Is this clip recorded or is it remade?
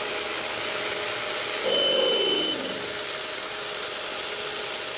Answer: recorded